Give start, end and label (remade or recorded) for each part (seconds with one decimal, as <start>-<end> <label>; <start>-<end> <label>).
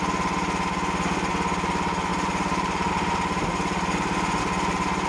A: 0.0-2.1 recorded; 2.1-2.9 remade; 2.9-5.1 recorded